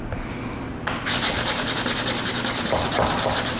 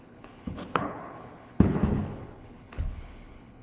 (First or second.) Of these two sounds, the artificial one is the second